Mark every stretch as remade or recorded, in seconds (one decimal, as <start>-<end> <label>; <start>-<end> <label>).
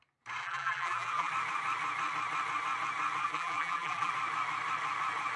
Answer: 0.0-0.4 recorded; 0.4-1.3 remade; 1.3-3.2 recorded; 3.2-4.1 remade; 4.1-5.4 recorded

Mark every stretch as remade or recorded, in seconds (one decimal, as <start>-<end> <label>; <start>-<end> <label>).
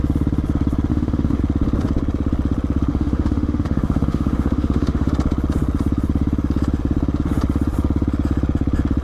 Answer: 0.0-0.9 recorded; 0.9-1.4 remade; 1.4-2.9 recorded; 2.9-5.1 remade; 5.1-9.0 recorded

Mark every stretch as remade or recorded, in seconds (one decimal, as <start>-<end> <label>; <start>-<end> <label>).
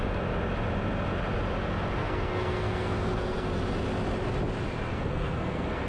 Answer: 0.0-2.0 recorded; 2.0-3.5 remade; 3.5-4.9 recorded; 4.9-5.9 remade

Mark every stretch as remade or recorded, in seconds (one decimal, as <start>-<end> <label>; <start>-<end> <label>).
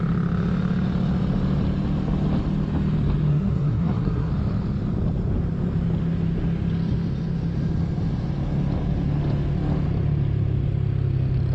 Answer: 0.0-3.3 recorded; 3.3-4.3 remade; 4.3-11.5 recorded